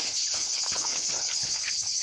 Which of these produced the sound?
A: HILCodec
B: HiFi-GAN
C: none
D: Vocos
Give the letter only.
A